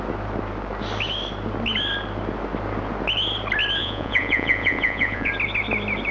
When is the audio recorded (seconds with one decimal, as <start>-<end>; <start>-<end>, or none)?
0.0-3.8; 5.3-6.1